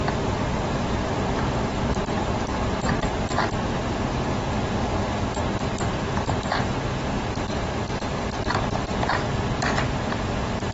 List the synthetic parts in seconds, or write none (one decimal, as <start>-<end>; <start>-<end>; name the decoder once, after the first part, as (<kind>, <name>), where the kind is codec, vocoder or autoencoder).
none